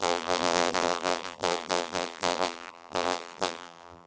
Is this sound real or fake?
fake